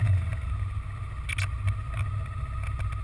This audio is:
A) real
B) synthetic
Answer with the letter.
A